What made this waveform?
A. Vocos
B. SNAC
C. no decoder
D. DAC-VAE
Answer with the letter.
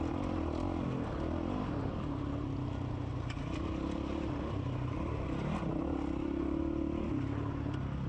C